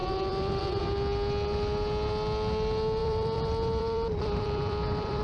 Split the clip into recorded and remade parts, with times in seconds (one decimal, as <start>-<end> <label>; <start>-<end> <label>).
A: 0.0-0.8 remade; 0.8-3.0 recorded; 3.0-5.2 remade